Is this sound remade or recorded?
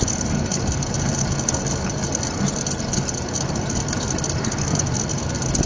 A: recorded